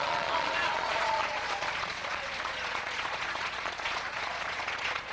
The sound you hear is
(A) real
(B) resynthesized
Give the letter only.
B